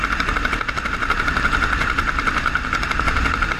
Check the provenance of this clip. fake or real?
real